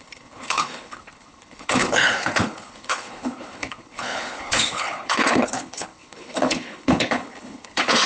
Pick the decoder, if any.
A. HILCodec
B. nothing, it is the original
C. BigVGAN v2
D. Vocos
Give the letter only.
A